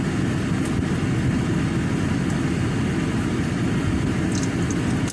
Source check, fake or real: real